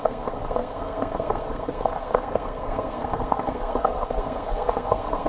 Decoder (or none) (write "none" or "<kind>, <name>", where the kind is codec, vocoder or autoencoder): codec, SNAC